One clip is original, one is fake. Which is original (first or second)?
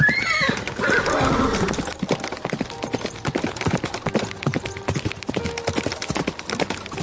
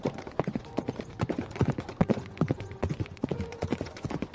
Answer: first